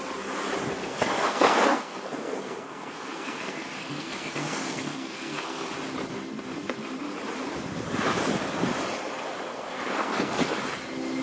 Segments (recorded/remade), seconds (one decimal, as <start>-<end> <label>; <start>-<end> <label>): 0.0-0.8 recorded; 0.8-5.7 remade; 5.7-9.5 recorded; 9.5-10.6 remade; 10.6-11.2 recorded